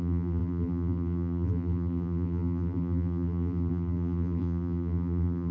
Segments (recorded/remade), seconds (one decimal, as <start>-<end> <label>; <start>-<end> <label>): 0.0-5.5 remade